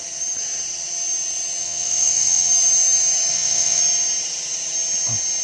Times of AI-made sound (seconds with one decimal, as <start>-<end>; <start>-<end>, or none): 1.6-2.5; 3.3-3.8